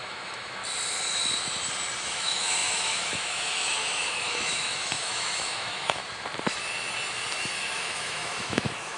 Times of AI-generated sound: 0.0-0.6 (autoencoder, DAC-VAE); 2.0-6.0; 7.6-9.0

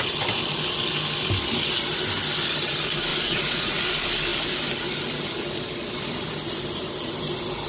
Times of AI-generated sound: 3.1-3.8 (vocoder, Vocos)

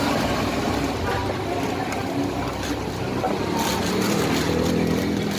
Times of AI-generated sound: 0.0-5.4 (vocoder, BigVGAN v2)

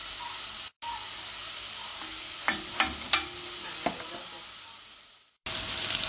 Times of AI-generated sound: none

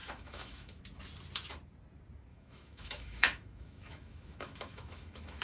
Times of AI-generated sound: 0.0-0.8 (autoencoder, DAC-VAE); 2.3-5.4

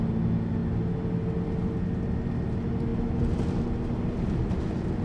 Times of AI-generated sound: none